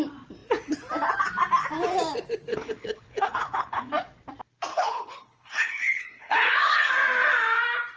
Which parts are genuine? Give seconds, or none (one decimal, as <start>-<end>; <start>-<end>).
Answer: 0.0-2.5; 3.9-4.7; 6.9-8.0